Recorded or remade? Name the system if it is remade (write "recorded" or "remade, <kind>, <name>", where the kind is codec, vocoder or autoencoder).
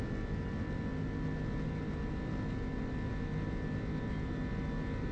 recorded